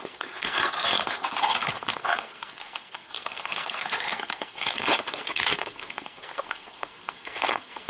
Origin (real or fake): fake